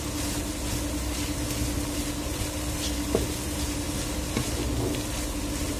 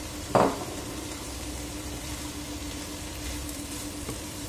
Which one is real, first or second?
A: first